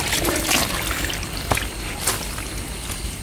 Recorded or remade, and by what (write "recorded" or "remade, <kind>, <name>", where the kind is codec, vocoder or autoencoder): recorded